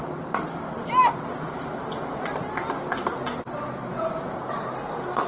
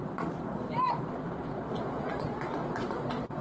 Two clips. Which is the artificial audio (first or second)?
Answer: second